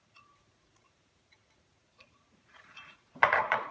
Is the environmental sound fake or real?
fake